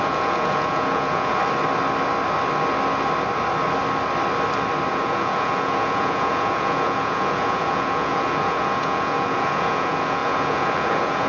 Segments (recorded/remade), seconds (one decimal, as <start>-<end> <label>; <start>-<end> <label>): 0.0-1.4 remade; 1.4-4.9 recorded; 4.9-11.3 remade